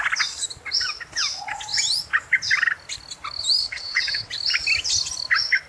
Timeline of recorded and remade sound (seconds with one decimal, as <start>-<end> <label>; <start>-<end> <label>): 0.0-3.6 recorded; 3.6-4.3 remade; 4.3-5.7 recorded